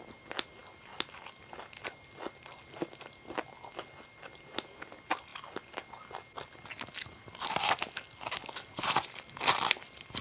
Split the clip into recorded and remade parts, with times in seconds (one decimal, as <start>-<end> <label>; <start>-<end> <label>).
0.0-10.2 recorded